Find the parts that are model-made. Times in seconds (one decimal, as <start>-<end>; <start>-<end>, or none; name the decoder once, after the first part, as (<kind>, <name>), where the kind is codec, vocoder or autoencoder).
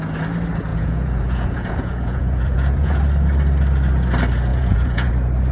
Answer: 0.7-3.0 (vocoder, Vocos); 4.5-5.1